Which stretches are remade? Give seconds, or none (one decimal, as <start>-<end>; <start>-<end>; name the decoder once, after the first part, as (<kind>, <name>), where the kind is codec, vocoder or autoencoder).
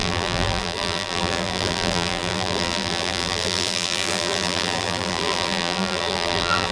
0.0-6.7 (vocoder, BigVGAN v2)